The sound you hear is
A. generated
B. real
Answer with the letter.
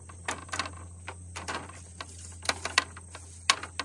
B